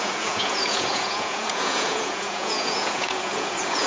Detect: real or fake fake